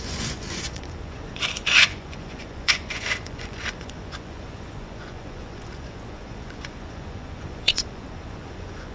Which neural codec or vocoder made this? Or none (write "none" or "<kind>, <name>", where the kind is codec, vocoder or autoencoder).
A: vocoder, Vocos